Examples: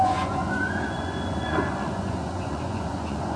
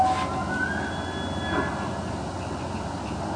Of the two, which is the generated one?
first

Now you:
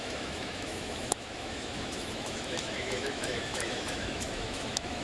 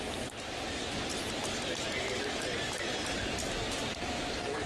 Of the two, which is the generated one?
first